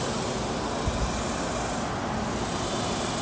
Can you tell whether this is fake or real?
real